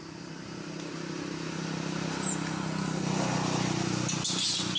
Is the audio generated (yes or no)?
no